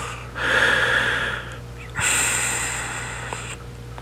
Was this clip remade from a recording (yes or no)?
no